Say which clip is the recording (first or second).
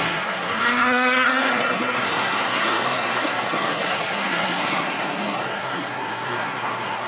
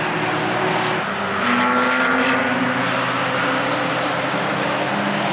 second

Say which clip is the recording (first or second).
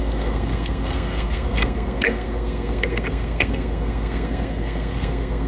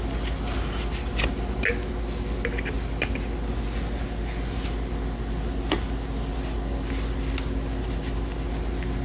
second